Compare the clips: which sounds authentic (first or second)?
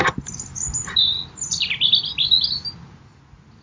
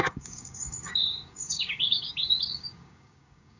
first